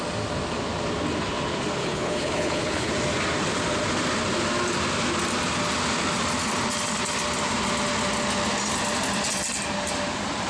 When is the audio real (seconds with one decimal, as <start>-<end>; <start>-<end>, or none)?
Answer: 0.0-1.8; 2.9-10.5